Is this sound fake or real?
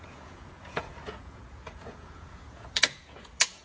fake